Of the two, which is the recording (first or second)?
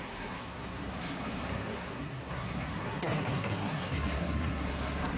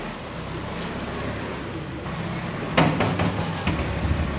second